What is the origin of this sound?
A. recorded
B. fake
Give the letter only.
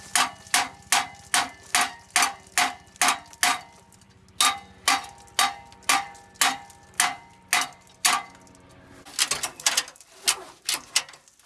A